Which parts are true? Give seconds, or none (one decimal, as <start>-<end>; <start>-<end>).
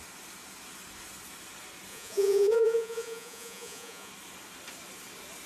0.0-1.9; 4.1-5.5